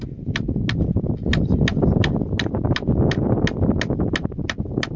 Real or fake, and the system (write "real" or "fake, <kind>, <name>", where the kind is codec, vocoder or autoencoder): real